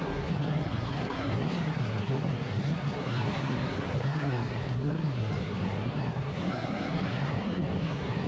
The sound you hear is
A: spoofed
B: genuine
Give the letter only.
A